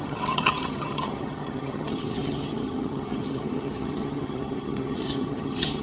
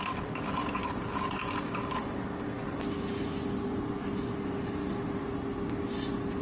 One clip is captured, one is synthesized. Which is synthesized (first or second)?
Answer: first